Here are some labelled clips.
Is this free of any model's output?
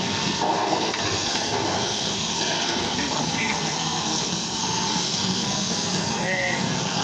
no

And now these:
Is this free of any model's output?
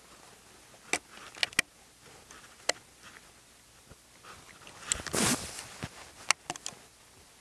yes